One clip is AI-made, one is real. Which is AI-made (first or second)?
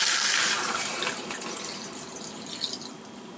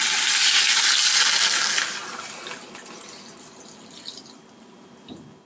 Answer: first